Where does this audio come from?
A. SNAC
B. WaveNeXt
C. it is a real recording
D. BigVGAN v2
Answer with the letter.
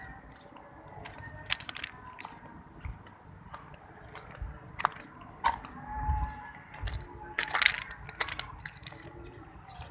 C